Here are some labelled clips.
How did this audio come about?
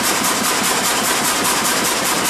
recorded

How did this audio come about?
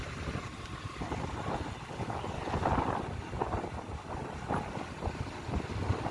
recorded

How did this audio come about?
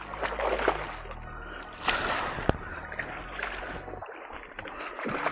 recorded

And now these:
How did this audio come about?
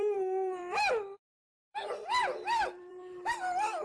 remade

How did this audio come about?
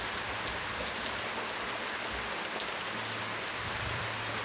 recorded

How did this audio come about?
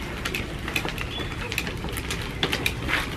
recorded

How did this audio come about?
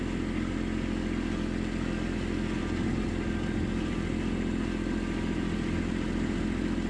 recorded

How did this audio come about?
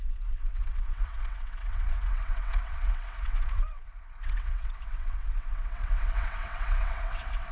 remade